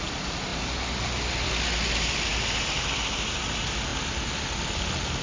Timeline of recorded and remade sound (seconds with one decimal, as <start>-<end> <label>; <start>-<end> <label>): 0.0-5.2 recorded